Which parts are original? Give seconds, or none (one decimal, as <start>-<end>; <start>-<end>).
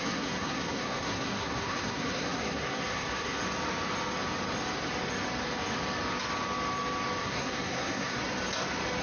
3.4-7.2; 8.2-9.0